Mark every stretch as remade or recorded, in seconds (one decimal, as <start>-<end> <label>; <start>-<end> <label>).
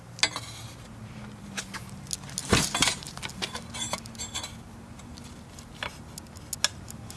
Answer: 0.0-2.4 recorded; 2.4-3.2 remade; 3.2-7.2 recorded